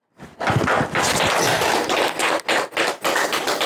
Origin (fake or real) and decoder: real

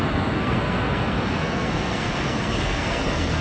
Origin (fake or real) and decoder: fake, codec, SNAC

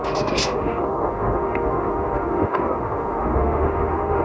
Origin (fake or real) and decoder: fake, autoencoder, DAC-VAE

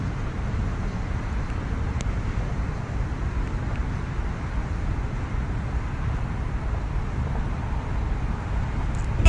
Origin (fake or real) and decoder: real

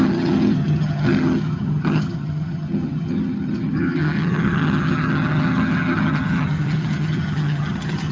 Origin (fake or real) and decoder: fake, vocoder, HiFi-GAN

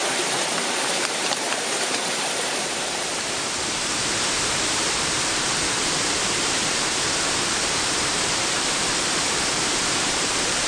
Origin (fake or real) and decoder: fake, vocoder, BigVGAN v2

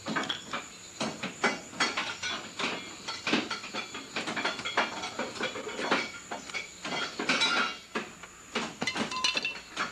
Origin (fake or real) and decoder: real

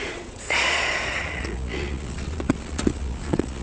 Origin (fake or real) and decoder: fake, vocoder, Vocos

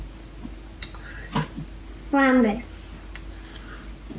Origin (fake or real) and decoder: real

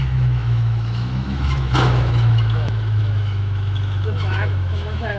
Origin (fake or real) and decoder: fake, autoencoder, DAC-VAE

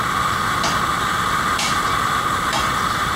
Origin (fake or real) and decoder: real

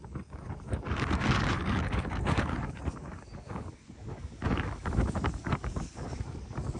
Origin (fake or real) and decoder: fake, codec, DAC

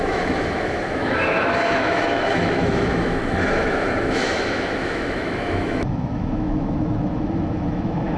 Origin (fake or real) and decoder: fake, autoencoder, DAC-VAE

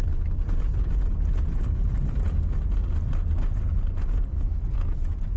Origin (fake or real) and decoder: real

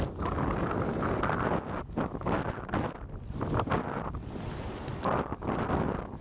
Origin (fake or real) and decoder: real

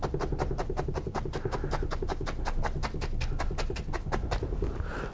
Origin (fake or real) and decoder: real